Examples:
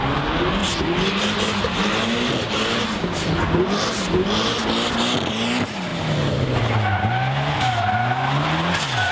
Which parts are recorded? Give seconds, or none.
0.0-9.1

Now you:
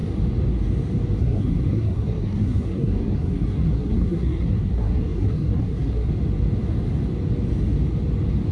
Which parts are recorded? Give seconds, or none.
0.0-1.2; 6.1-8.5

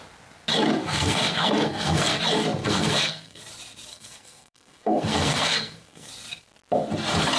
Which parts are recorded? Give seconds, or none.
0.0-0.8; 2.2-2.6; 3.4-3.9; 6.1-7.4

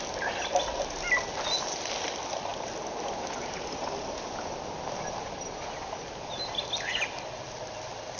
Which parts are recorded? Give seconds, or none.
0.0-8.2

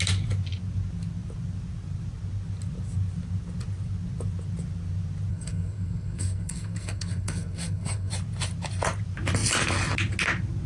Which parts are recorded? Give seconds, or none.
0.0-5.3; 8.1-10.7

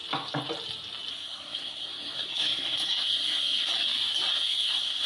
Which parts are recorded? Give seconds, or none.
0.0-1.1; 3.7-4.3

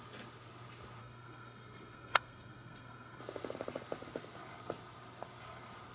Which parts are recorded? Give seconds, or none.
0.0-1.0; 3.2-5.9